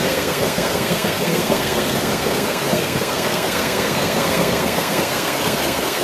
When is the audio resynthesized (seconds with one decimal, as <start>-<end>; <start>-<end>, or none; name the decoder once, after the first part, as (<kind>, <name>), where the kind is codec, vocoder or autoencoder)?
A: 0.0-6.0 (codec, SNAC)